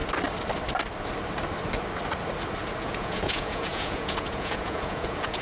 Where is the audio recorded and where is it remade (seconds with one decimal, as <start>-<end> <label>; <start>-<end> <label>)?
0.0-2.8 recorded; 2.8-5.4 remade